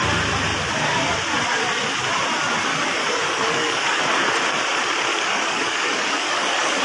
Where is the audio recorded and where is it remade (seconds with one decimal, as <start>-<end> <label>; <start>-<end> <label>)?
0.0-2.7 recorded; 2.7-4.0 remade; 4.0-5.1 recorded; 5.1-6.8 remade

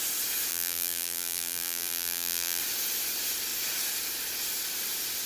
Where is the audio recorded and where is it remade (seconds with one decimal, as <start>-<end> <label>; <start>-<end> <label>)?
0.0-0.5 recorded; 0.5-2.6 remade; 2.6-5.3 recorded

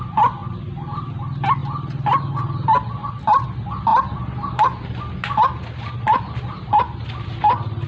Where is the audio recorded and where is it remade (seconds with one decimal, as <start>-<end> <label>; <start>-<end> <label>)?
0.0-0.4 recorded; 0.4-1.1 remade; 1.1-7.9 recorded

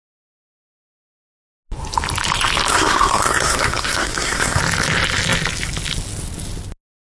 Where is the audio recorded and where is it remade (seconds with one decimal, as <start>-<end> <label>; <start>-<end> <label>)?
0.0-2.7 recorded; 2.7-4.6 remade; 4.6-7.1 recorded